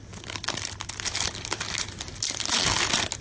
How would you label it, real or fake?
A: real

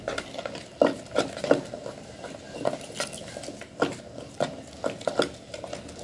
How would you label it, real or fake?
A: real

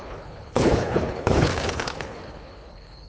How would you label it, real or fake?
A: fake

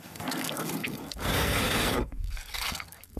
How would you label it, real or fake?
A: fake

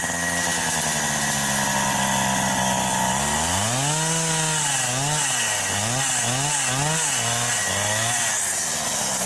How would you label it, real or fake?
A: real